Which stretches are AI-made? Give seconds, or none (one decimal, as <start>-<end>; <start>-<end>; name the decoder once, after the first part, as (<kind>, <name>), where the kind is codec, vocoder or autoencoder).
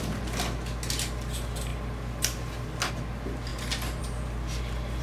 none